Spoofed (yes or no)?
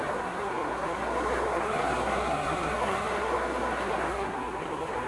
yes